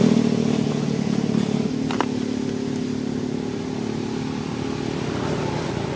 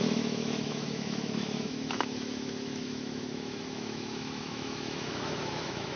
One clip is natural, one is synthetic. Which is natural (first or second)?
first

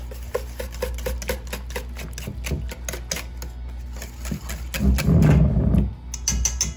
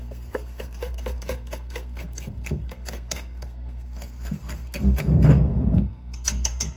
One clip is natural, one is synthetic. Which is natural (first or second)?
first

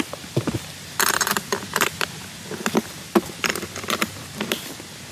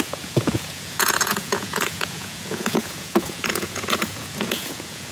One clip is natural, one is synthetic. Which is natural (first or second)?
first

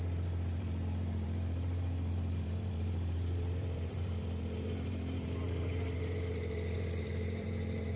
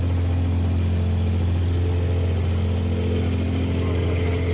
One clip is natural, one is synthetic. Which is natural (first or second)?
second